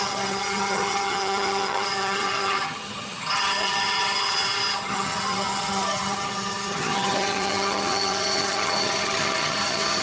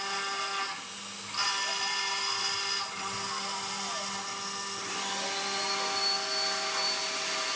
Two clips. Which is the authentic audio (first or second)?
second